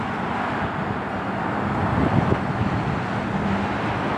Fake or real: real